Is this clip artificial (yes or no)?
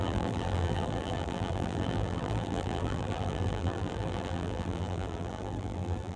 yes